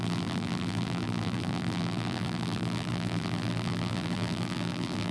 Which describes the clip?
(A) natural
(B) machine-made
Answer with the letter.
B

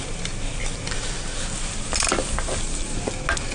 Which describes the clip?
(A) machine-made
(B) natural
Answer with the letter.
B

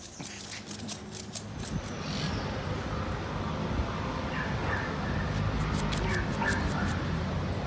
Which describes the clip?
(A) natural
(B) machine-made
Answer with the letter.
A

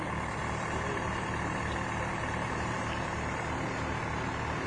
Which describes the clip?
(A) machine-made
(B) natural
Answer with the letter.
B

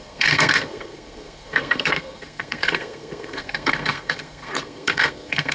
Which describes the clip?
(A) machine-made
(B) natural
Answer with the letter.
A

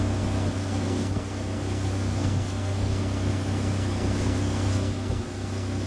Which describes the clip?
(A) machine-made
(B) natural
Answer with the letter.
A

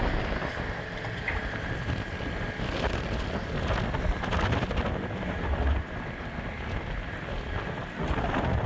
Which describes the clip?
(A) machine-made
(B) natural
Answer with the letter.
B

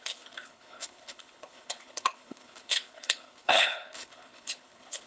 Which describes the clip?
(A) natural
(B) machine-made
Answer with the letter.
B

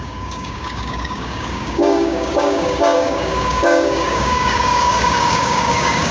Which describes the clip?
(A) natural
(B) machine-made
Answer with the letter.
B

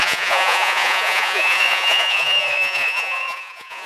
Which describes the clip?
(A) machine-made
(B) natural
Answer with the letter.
A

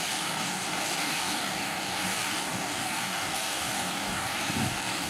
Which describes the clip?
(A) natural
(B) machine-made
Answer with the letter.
B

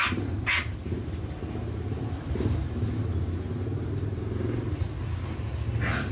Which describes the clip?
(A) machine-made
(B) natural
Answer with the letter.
B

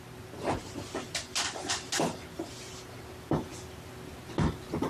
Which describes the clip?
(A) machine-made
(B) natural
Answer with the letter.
B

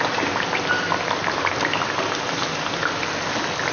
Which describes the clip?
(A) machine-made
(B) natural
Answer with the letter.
B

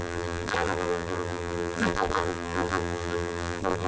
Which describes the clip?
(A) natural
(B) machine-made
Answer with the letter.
B